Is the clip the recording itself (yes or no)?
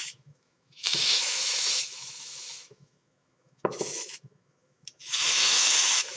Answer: no